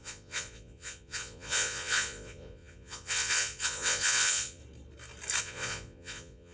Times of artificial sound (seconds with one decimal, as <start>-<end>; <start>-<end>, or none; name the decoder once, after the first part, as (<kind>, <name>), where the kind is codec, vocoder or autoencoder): 0.0-4.6 (vocoder, Vocos); 5.4-6.5